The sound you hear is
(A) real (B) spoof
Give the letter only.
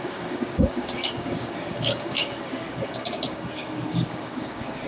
B